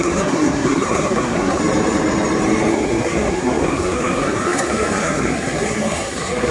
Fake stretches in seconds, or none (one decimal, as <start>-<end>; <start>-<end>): 0.0-1.6; 2.7-6.5